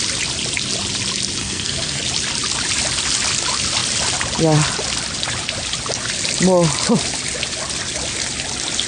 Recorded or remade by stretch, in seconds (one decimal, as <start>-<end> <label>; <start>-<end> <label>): 0.0-1.4 recorded; 1.4-2.0 remade; 2.0-8.9 recorded